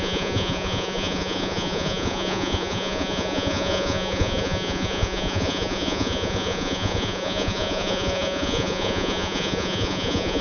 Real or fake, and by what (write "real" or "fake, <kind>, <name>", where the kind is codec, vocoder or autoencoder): fake, vocoder, Vocos